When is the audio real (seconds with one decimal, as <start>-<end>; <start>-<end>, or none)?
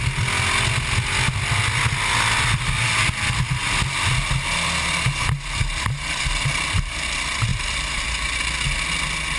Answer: 0.0-7.5; 8.4-9.4